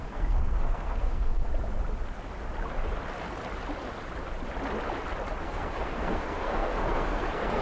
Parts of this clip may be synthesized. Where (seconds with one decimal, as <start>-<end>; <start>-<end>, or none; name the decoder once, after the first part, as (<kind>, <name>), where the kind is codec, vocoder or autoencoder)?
0.0-1.5 (codec, SNAC); 5.4-7.6